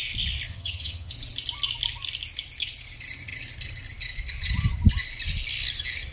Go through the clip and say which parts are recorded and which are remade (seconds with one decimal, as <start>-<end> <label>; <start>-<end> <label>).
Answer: 0.0-0.5 recorded; 0.5-1.1 remade; 1.1-6.1 recorded

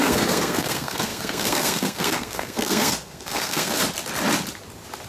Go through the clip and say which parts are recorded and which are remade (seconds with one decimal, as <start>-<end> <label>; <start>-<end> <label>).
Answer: 0.0-3.8 remade; 3.8-5.1 recorded

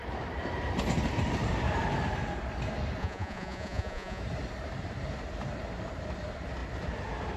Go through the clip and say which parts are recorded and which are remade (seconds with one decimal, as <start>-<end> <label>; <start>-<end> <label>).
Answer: 0.0-3.0 recorded; 3.0-4.2 remade; 4.2-7.4 recorded

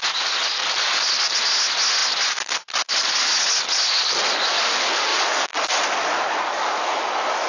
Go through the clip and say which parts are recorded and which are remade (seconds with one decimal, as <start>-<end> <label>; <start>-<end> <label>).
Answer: 0.0-7.5 recorded

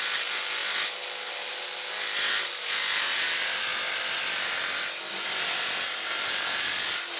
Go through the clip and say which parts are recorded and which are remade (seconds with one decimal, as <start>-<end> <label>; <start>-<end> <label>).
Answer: 0.0-0.6 remade; 0.6-2.3 recorded; 2.3-3.7 remade; 3.7-5.1 recorded; 5.1-7.2 remade